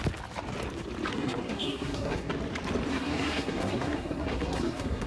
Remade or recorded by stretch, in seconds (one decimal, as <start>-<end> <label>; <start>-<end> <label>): 0.0-1.1 recorded; 1.1-2.3 remade; 2.3-2.9 recorded; 2.9-5.1 remade